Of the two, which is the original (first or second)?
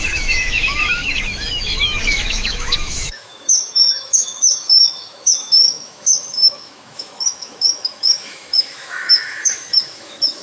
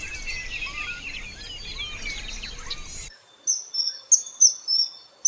second